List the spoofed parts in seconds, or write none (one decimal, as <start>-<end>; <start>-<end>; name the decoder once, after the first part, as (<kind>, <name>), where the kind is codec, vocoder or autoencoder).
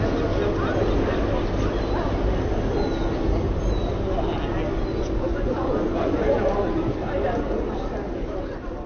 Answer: 4.9-6.3 (vocoder, Vocos)